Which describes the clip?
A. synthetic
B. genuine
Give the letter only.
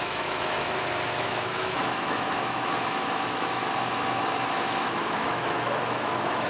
A